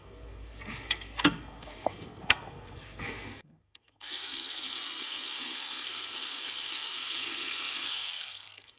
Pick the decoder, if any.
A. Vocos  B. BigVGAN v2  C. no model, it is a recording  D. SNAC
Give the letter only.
D